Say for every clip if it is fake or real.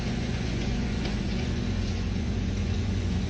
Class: fake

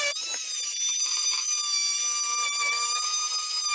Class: fake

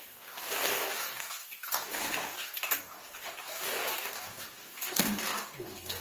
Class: fake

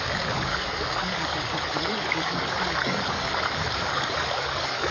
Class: fake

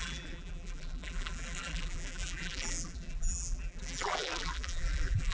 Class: fake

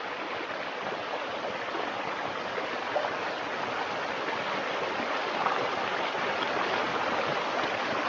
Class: real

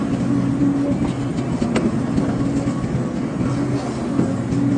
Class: real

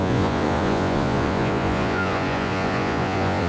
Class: fake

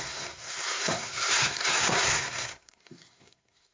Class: fake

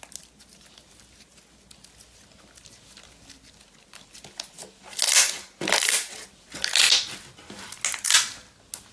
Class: real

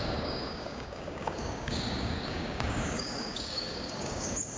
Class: fake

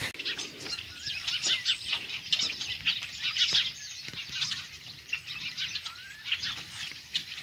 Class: real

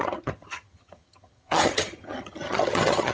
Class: fake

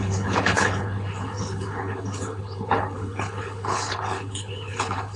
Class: fake